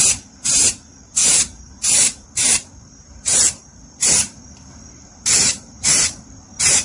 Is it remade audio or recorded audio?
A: remade